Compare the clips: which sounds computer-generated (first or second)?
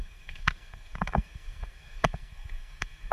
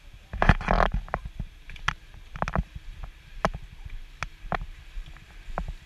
first